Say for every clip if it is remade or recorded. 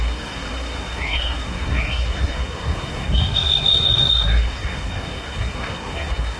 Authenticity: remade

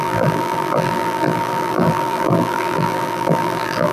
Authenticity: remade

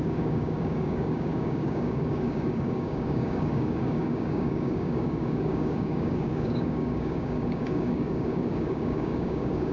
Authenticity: remade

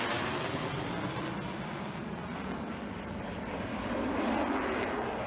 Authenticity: recorded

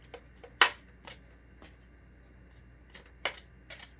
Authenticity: recorded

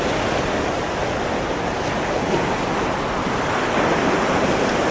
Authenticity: recorded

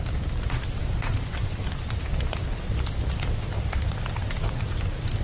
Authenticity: recorded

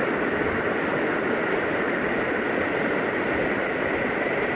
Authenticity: recorded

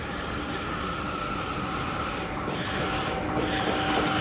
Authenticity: recorded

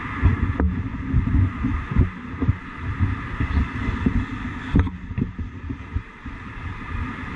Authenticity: recorded